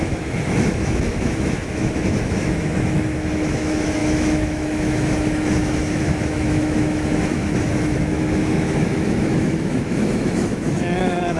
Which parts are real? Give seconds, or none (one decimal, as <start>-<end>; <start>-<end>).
none